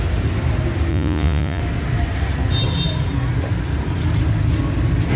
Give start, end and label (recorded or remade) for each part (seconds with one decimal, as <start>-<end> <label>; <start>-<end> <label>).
0.0-0.9 recorded; 0.9-1.6 remade; 1.6-5.2 recorded